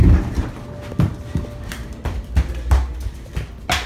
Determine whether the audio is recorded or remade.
recorded